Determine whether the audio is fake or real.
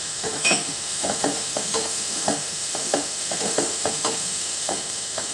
fake